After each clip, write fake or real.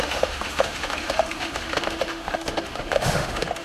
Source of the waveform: fake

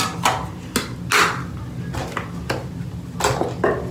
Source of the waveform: real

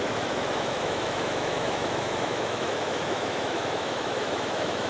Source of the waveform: fake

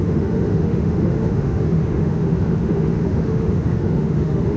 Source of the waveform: fake